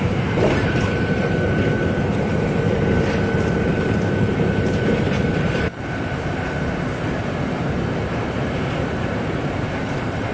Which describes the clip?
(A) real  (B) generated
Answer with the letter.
B